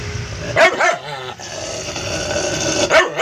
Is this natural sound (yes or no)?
yes